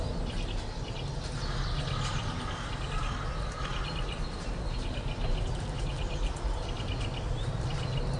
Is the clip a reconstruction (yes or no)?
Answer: no